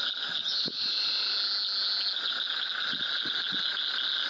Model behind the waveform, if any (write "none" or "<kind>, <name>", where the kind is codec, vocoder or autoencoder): none